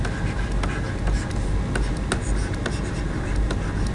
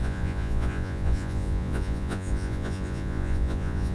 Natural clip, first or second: first